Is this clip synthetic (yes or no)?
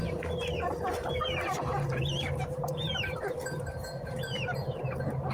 yes